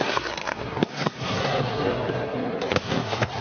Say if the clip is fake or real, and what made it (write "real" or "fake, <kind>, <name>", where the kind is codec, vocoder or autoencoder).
fake, codec, SNAC